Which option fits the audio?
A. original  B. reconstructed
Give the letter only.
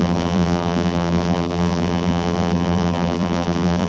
B